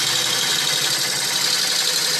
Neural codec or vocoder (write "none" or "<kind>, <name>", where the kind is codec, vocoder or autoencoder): none